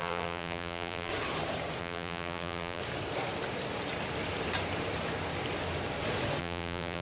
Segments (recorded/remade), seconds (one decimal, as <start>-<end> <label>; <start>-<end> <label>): 0.0-1.1 remade; 1.1-1.8 recorded; 1.8-2.8 remade; 2.8-6.4 recorded; 6.4-7.0 remade